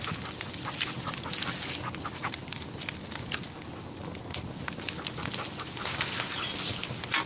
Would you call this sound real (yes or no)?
yes